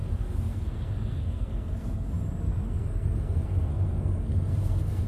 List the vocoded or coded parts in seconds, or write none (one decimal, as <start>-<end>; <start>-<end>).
0.0-2.1; 2.5-5.1